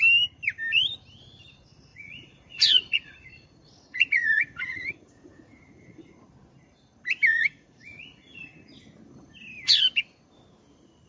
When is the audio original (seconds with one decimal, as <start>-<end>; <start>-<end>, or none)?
0.0-1.9; 6.0-7.3; 8.7-11.1